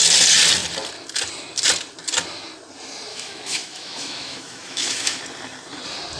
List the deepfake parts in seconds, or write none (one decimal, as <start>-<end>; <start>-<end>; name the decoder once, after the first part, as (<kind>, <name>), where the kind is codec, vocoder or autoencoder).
3.1-5.2 (autoencoder, DAC-VAE)